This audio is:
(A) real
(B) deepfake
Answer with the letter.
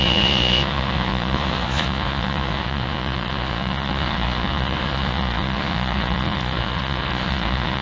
B